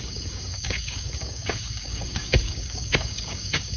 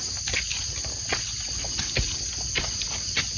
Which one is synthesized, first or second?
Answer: first